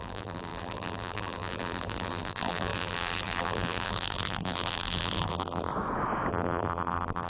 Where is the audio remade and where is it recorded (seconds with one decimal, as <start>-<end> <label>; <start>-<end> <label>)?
0.0-5.7 remade; 5.7-6.3 recorded; 6.3-7.3 remade